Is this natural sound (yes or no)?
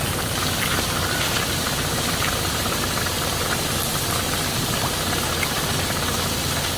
yes